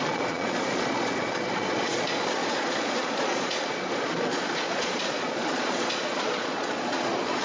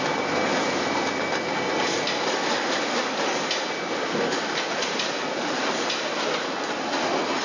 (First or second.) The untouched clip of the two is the second